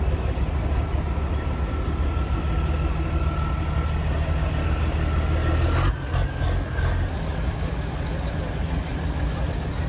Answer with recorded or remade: recorded